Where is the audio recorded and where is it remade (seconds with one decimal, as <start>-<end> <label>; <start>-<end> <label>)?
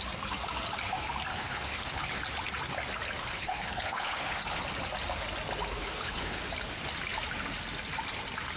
0.0-1.3 recorded; 1.3-2.2 remade; 2.2-3.2 recorded; 3.2-4.6 remade; 4.6-5.8 recorded; 5.8-6.4 remade; 6.4-8.6 recorded